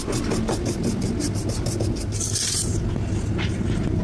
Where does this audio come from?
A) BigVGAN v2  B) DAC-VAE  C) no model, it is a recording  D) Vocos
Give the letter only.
C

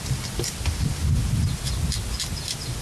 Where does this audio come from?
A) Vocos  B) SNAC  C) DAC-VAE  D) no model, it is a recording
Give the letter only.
D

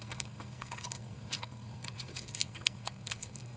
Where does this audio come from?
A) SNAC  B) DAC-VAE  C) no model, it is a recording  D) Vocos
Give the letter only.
A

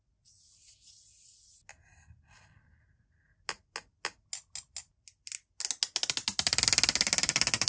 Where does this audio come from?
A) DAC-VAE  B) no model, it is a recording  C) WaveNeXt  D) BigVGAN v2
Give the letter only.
B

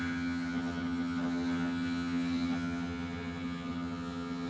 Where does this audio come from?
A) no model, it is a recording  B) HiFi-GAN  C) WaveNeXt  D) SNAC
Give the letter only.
B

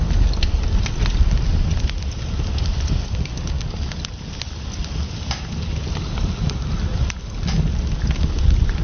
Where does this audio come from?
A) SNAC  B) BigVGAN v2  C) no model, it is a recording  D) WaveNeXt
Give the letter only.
C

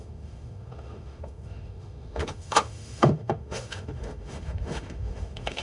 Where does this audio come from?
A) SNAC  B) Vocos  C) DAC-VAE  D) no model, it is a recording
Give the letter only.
C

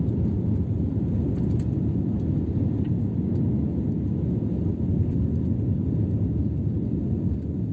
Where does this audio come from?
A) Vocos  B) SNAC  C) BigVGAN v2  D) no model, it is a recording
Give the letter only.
C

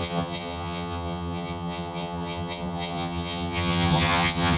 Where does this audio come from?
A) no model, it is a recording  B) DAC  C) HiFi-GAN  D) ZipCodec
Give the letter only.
C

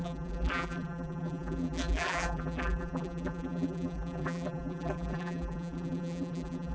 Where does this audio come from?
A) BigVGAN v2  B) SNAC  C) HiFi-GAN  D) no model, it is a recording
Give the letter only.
A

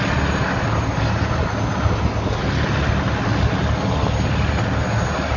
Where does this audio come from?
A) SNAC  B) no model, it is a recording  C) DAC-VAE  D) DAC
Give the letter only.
B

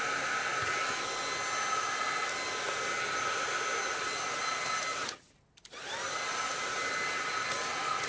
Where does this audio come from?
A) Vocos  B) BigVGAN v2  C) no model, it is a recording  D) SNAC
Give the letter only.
C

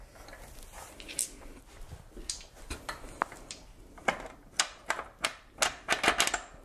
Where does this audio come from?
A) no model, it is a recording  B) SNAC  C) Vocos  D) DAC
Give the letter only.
A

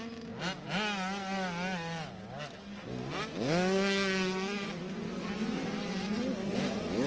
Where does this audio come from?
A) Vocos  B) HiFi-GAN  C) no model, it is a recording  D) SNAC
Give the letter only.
C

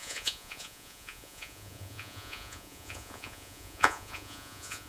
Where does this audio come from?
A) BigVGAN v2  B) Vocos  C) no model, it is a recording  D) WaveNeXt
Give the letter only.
B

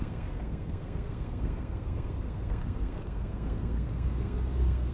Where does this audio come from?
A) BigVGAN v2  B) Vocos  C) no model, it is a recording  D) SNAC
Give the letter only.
D